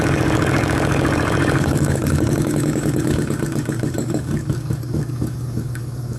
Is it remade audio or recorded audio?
remade